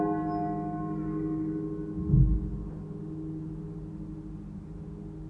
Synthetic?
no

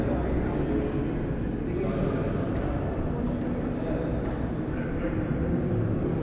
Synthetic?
no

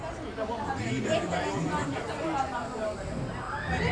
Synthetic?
no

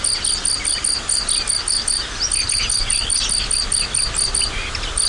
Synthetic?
no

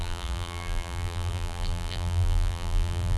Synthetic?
yes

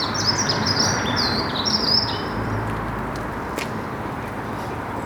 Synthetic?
yes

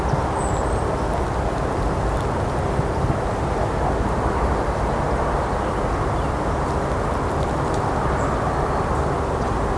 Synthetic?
no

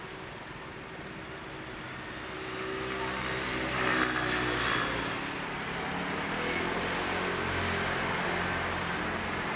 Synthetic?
no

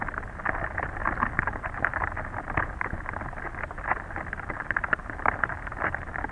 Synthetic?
no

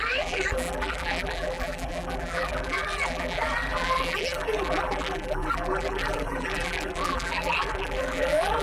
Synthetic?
yes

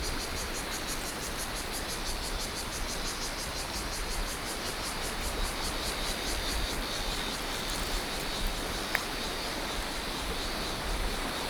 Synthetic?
yes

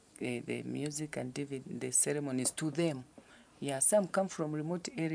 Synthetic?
yes